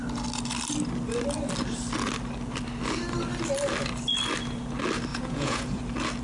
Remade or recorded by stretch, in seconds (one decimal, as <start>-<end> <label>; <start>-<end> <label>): 0.0-5.1 recorded; 5.1-5.8 remade; 5.8-6.2 recorded